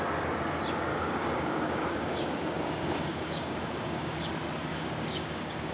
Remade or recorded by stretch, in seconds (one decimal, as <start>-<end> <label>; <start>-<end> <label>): 0.0-0.9 recorded; 0.9-4.3 remade; 4.3-4.7 recorded; 4.7-5.7 remade